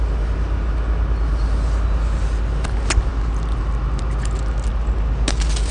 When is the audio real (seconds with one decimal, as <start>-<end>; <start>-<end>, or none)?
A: 0.0-5.7